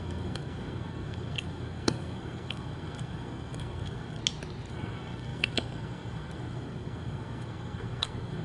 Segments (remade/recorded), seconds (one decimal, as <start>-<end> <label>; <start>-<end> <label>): 0.0-4.2 remade; 4.2-4.7 recorded; 4.7-8.4 remade